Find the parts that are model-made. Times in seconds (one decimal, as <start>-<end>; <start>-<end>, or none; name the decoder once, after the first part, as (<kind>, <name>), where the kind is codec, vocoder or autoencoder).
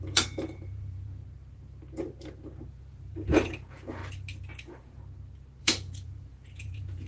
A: 0.0-1.2 (vocoder, Vocos); 2.7-4.0; 4.6-5.0; 5.6-7.1